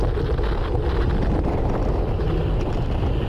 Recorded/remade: recorded